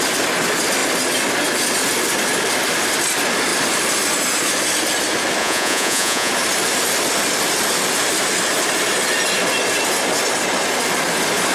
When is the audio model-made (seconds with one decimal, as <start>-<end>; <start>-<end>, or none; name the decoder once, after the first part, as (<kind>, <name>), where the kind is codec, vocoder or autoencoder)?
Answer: 5.4-6.3 (vocoder, Vocos)